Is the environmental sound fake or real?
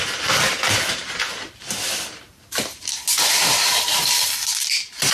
fake